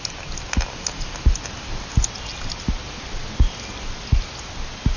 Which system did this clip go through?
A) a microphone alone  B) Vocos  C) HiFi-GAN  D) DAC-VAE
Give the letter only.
A